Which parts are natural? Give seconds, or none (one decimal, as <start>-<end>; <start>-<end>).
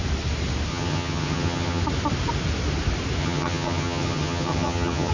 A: 0.0-0.7; 1.8-3.2